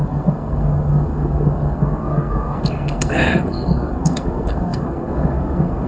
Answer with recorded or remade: remade